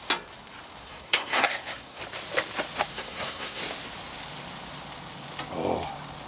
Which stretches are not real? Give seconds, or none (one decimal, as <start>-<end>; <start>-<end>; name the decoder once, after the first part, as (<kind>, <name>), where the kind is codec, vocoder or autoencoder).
0.8-2.0 (codec, SNAC); 2.9-3.6